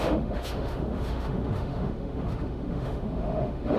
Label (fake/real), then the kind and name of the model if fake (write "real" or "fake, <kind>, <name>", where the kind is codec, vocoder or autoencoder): fake, autoencoder, DAC-VAE